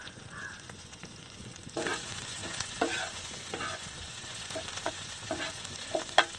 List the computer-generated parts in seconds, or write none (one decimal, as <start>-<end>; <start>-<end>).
0.0-6.4